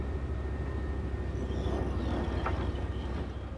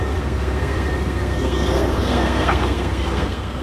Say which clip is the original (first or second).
first